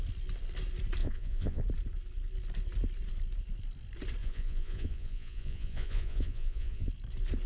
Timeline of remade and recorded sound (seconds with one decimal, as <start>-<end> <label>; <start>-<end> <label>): 0.0-1.0 recorded; 1.0-1.6 remade; 1.6-4.2 recorded; 4.2-6.9 remade; 6.9-7.5 recorded